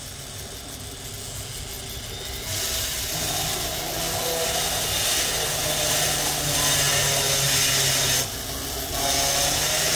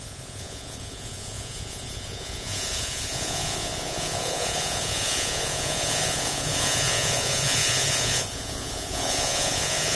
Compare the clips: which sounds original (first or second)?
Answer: first